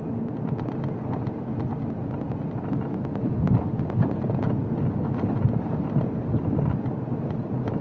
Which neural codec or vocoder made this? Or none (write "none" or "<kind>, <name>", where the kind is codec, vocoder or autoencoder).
none